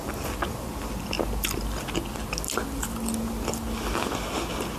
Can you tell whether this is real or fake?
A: real